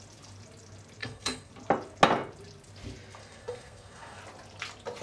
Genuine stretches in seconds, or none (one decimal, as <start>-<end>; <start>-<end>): 0.0-1.0; 1.5-3.2; 4.2-5.0